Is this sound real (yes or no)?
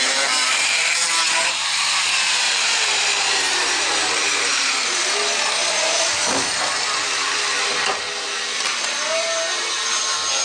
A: no